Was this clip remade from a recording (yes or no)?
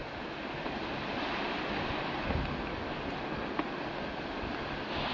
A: no